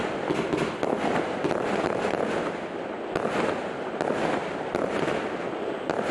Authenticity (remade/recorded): recorded